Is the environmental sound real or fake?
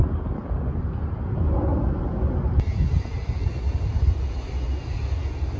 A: real